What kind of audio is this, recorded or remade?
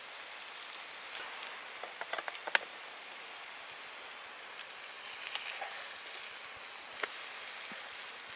recorded